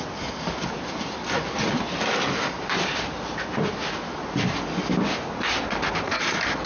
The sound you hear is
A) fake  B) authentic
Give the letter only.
B